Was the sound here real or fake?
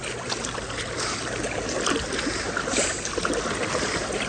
real